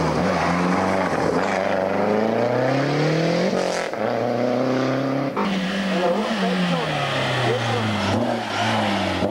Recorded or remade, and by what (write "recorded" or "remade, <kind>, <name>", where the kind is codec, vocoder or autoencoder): recorded